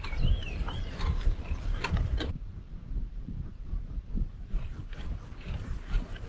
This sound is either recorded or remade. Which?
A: remade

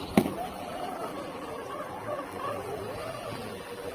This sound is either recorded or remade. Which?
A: remade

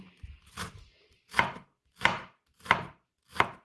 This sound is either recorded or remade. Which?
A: remade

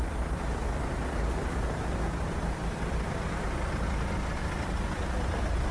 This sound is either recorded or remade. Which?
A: remade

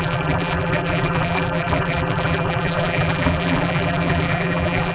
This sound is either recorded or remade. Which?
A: remade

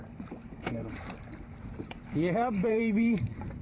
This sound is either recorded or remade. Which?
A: remade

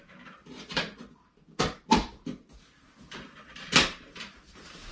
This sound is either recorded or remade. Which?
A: remade